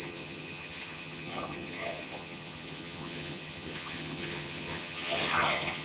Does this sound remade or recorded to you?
remade